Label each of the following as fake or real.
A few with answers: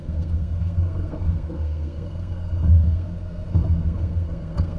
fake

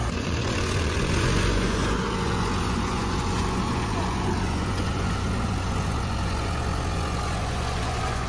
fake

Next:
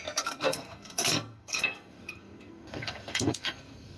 fake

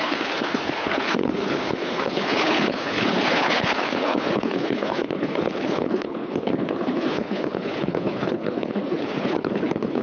fake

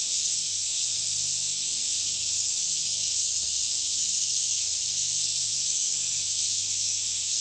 fake